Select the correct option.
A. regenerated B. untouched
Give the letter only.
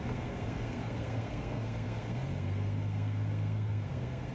A